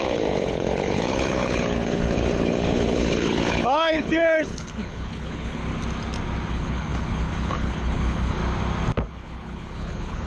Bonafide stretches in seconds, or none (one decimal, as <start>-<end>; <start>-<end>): 5.6-6.5; 8.4-9.1